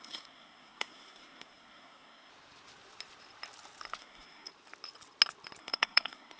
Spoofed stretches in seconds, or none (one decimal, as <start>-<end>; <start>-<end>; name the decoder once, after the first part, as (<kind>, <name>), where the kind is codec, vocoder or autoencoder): 0.0-2.3 (codec, SNAC); 4.0-4.5; 5.6-6.4

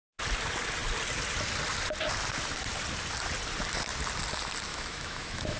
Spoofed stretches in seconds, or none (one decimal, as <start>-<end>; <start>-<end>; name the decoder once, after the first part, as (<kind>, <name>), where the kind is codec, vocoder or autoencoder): 4.7-5.6 (autoencoder, DAC-VAE)

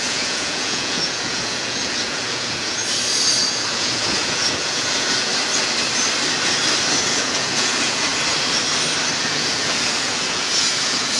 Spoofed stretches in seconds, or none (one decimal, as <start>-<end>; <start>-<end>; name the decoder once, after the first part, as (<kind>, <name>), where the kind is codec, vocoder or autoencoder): 0.0-2.8 (vocoder, Vocos); 3.5-5.3; 7.0-8.1; 9.2-11.2

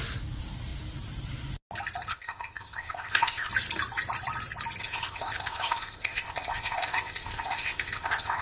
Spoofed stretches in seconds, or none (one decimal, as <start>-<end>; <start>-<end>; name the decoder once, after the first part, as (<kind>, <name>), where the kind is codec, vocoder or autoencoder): 2.1-3.5 (codec, ZipCodec); 4.8-8.4